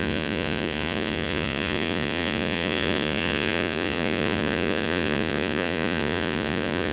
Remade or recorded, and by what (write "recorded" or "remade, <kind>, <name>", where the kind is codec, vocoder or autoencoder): remade, vocoder, Vocos